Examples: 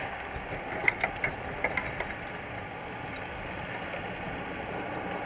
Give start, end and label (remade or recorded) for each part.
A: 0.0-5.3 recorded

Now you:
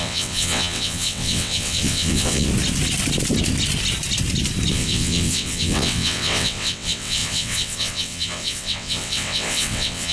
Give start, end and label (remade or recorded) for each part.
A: 0.0-2.5 remade; 2.5-4.7 recorded; 4.7-10.1 remade

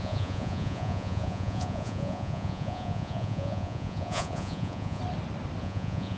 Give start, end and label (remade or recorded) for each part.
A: 0.0-5.0 remade; 5.0-5.6 recorded; 5.6-6.2 remade

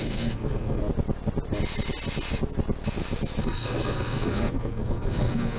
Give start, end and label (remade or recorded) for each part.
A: 0.0-0.8 remade; 0.8-3.4 recorded; 3.4-5.6 remade